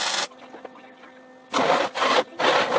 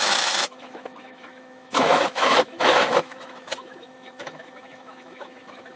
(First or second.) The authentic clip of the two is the first